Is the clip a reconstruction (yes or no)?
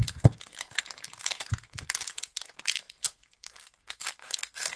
yes